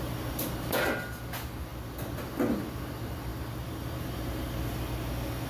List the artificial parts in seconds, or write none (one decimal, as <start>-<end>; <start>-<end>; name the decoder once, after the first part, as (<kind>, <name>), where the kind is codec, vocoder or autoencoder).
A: none